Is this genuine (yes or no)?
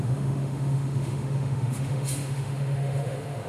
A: no